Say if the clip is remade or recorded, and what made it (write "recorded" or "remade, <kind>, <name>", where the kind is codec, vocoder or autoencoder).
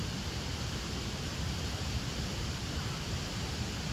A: recorded